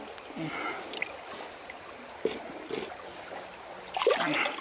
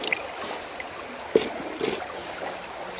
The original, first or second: first